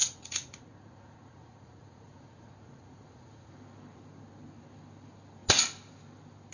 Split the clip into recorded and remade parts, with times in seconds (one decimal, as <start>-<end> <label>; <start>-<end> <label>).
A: 0.0-3.5 remade; 3.5-6.5 recorded